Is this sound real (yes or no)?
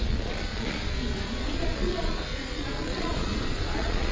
no